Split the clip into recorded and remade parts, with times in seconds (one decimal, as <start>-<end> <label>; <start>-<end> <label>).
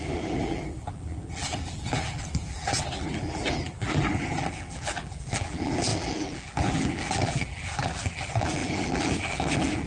0.0-9.9 remade